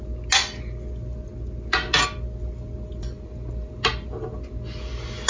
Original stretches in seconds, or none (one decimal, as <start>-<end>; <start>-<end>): 0.0-5.3